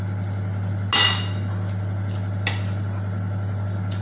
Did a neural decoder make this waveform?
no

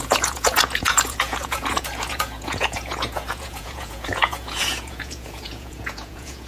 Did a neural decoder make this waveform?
yes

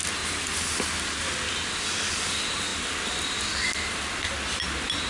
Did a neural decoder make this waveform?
no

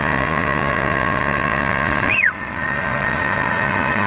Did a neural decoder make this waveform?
yes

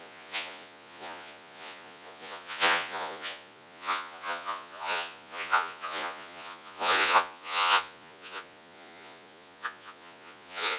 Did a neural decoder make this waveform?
yes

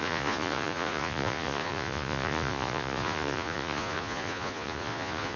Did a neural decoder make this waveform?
yes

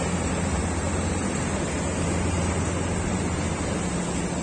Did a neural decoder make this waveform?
no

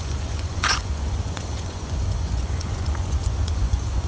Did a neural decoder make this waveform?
yes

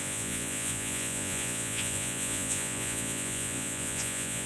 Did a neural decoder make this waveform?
yes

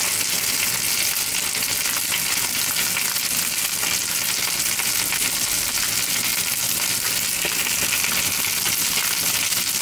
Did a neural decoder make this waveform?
no